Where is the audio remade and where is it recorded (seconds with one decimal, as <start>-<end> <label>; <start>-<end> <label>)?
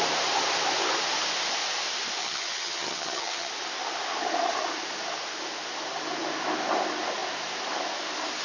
0.0-2.2 recorded; 2.2-3.5 remade; 3.5-8.4 recorded